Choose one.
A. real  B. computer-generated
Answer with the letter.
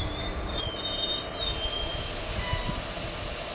A